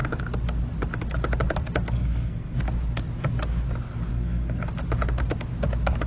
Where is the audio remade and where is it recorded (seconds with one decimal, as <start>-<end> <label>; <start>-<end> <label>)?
0.0-2.0 recorded; 2.0-2.6 remade; 2.6-4.1 recorded; 4.1-4.7 remade; 4.7-6.1 recorded